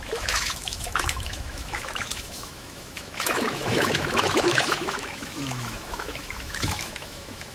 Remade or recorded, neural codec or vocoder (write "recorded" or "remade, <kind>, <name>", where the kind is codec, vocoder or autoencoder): remade, autoencoder, DAC-VAE